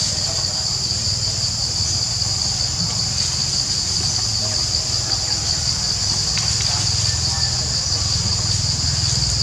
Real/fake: real